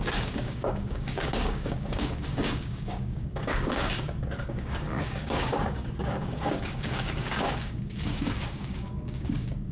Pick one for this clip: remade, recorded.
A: remade